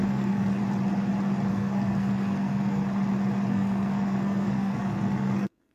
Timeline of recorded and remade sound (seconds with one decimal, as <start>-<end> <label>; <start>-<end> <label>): 0.0-0.6 remade; 0.6-1.5 recorded; 1.5-2.8 remade; 2.8-3.5 recorded; 3.5-5.7 remade